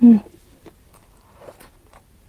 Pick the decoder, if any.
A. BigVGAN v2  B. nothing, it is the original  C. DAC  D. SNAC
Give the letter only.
A